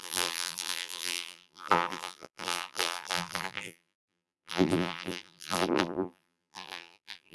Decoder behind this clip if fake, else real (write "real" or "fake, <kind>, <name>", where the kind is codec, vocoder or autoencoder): fake, vocoder, BigVGAN v2